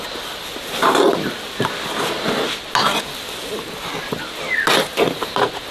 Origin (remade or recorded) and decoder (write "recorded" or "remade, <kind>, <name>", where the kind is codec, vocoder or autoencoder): recorded